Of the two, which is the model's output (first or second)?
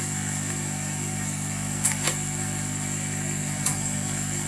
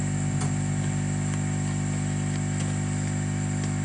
first